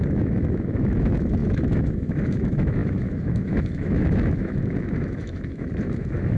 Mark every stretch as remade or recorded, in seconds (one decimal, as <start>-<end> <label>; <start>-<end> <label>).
0.0-6.4 remade